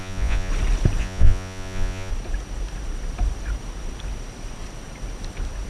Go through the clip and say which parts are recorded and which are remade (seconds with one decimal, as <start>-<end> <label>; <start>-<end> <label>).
0.0-0.5 remade; 0.5-1.0 recorded; 1.0-2.1 remade; 2.1-5.7 recorded